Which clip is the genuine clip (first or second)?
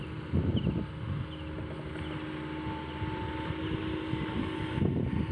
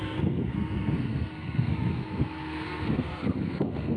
first